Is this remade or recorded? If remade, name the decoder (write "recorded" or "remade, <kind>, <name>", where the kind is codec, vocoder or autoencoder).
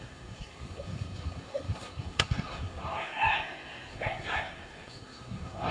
remade, codec, SNAC